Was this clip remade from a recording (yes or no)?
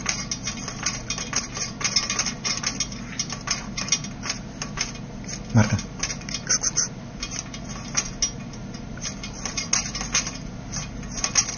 no